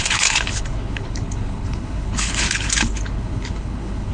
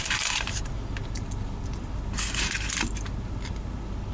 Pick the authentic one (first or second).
second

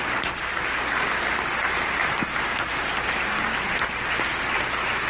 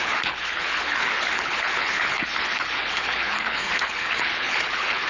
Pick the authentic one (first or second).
first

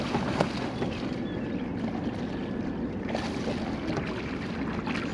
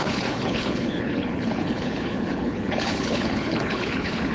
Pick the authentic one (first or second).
first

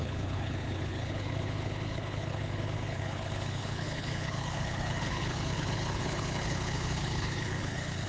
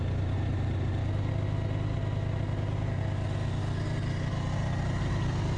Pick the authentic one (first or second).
second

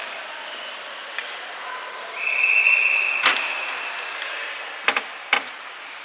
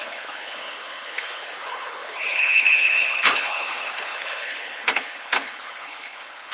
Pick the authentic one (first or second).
first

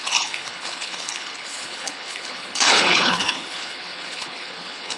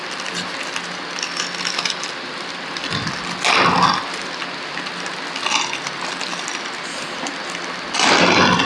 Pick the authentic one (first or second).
second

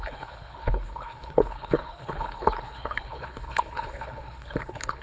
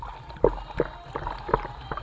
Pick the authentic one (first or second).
second